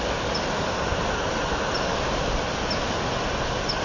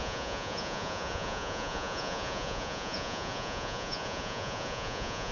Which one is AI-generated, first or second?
second